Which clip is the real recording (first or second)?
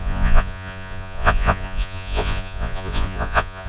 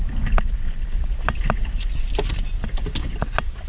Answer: second